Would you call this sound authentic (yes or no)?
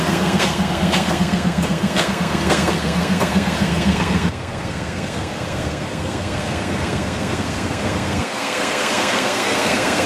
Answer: no